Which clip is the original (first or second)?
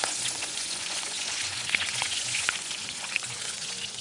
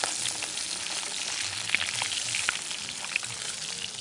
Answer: second